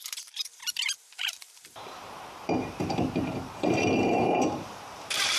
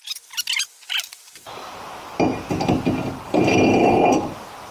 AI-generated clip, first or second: first